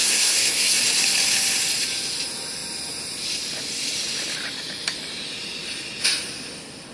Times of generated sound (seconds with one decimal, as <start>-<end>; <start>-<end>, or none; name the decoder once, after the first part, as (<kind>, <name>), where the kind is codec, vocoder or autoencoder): 0.0-0.8 (codec, SNAC)